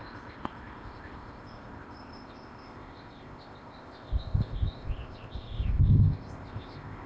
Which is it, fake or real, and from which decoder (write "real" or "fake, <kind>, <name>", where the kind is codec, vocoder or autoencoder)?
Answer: fake, codec, ZipCodec